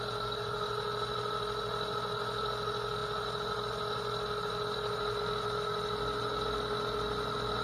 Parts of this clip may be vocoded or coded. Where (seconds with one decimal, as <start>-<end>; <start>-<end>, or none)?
none